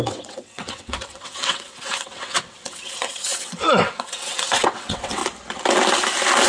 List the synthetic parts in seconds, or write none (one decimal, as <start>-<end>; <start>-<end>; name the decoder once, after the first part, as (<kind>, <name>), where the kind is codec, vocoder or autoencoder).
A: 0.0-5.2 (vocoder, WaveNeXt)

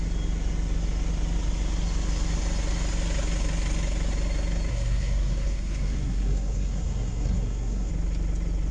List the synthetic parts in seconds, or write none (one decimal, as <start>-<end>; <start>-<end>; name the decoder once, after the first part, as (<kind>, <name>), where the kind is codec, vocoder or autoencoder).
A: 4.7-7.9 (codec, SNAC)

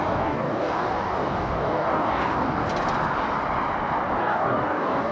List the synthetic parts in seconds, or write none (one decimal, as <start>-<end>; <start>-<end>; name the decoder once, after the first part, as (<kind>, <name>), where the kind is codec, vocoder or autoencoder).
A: 0.0-2.6 (codec, DAC); 4.2-5.1

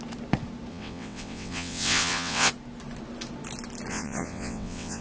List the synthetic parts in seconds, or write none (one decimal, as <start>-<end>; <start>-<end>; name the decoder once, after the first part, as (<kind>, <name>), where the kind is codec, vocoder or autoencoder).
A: 0.7-2.5 (vocoder, WaveNeXt); 3.9-5.0

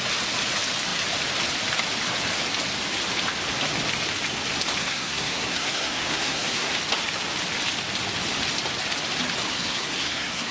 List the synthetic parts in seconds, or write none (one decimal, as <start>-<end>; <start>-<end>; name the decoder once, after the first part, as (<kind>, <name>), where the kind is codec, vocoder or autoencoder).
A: 4.8-6.7 (codec, SNAC); 9.5-10.5

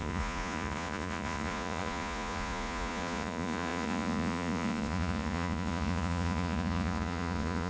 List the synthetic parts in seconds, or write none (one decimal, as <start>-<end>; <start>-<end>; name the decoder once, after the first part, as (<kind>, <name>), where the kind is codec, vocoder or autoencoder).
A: 0.0-7.7 (vocoder, Vocos)